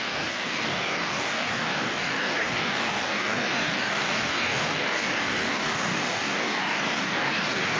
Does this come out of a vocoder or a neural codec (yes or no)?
yes